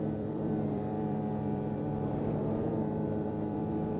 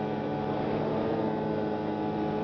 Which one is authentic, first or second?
second